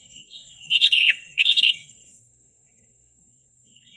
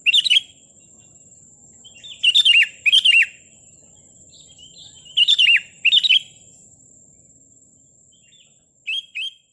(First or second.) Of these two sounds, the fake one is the first